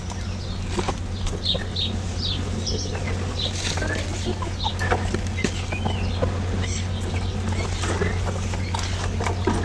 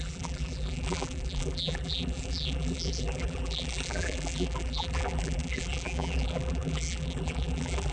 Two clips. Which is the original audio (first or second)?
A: first